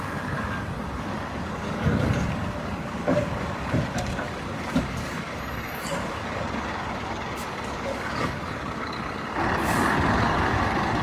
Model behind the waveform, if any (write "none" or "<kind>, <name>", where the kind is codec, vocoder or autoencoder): codec, DAC